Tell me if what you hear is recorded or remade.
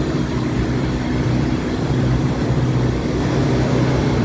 remade